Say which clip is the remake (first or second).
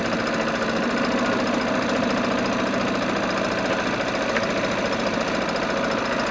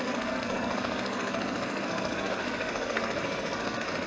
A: second